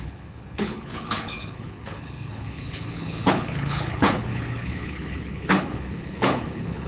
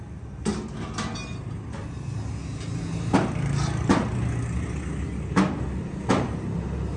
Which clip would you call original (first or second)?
second